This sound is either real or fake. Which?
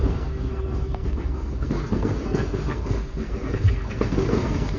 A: fake